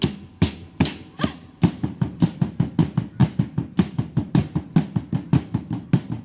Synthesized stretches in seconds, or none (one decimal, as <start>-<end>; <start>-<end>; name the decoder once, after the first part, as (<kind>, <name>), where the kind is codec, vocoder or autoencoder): none